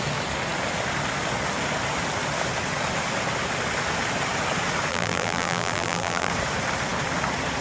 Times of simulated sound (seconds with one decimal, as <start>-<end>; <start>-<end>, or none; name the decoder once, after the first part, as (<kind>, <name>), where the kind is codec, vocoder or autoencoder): 4.9-6.3 (vocoder, BigVGAN v2)